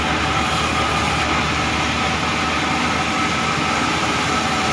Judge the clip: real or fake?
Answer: real